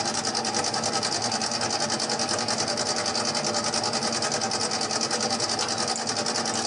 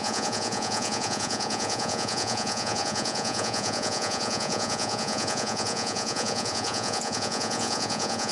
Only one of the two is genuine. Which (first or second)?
first